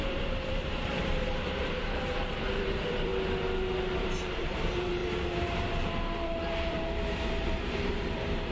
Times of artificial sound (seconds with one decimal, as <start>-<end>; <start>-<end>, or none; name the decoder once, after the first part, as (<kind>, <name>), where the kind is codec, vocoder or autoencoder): 0.0-3.1 (vocoder, BigVGAN v2); 4.0-8.5